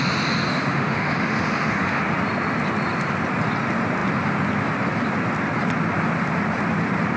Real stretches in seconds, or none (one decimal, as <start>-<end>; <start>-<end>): 0.0-0.5; 2.0-7.2